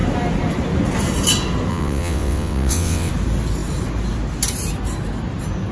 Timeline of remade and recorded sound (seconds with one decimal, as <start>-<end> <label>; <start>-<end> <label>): 0.0-1.7 recorded; 1.7-3.1 remade; 3.1-5.7 recorded